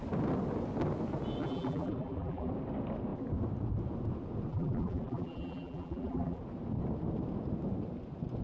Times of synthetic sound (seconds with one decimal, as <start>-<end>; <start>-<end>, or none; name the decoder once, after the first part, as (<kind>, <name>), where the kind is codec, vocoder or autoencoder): 1.4-2.5 (vocoder, BigVGAN v2); 4.5-6.4